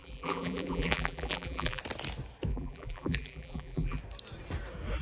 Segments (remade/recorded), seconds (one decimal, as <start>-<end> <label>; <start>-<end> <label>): 0.0-1.8 remade; 1.8-2.5 recorded; 2.5-4.0 remade; 4.0-5.0 recorded